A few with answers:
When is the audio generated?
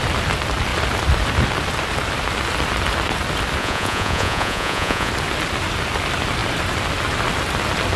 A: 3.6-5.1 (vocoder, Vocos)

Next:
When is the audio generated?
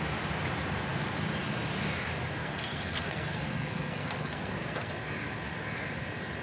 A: 2.4-4.9 (codec, SNAC)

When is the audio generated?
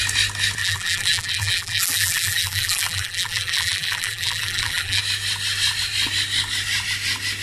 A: 0.6-5.0 (vocoder, BigVGAN v2)